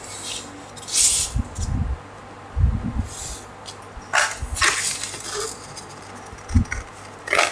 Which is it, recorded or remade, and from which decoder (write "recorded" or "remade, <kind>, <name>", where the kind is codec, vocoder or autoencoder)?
recorded